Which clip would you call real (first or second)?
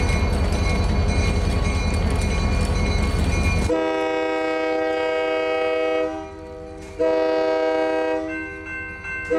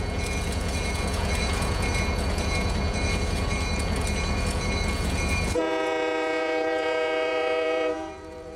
first